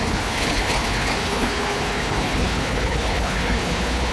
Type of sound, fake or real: fake